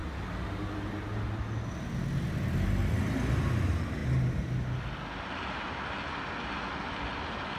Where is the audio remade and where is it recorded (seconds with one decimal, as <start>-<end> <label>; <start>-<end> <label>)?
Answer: 0.0-7.6 recorded